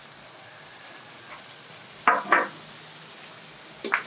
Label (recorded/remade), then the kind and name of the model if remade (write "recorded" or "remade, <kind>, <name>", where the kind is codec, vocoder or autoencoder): recorded